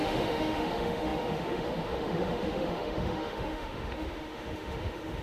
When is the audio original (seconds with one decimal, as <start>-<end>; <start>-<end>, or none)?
none